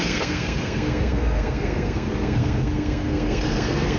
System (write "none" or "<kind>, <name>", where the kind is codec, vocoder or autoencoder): codec, SNAC